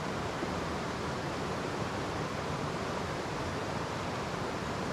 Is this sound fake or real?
fake